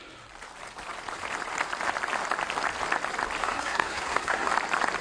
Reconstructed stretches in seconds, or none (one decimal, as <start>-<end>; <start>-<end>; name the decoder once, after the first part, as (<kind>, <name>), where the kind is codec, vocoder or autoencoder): 3.4-4.5 (codec, SNAC)